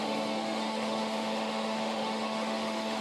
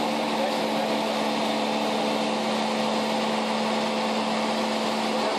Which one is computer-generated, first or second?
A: first